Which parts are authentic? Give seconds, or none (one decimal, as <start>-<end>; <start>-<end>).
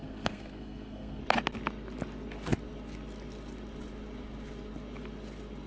1.2-5.7